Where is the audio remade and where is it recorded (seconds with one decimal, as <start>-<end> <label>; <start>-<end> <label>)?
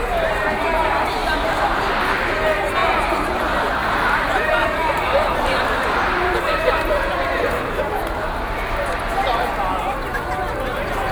0.0-1.2 recorded; 1.2-1.8 remade; 1.8-2.8 recorded; 2.8-3.4 remade; 3.4-3.8 recorded; 3.8-8.9 remade; 8.9-11.1 recorded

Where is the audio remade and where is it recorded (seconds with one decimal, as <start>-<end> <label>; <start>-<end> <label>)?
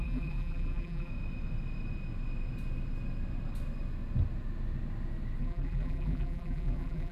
0.0-1.1 remade; 1.1-5.4 recorded; 5.4-7.1 remade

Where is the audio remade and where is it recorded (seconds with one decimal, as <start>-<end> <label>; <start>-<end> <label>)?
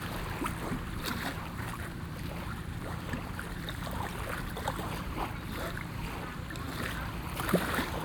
0.0-1.1 recorded; 1.1-5.9 remade; 5.9-8.0 recorded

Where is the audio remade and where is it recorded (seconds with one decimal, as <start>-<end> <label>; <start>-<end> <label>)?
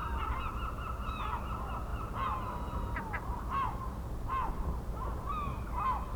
0.0-1.9 recorded; 1.9-3.8 remade; 3.8-6.2 recorded